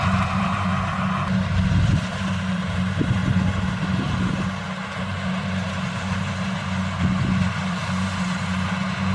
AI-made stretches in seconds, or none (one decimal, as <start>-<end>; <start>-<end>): 0.0-0.7; 1.8-3.2; 3.9-9.1